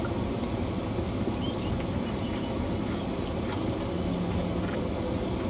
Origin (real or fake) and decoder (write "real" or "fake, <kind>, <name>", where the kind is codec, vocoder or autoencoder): real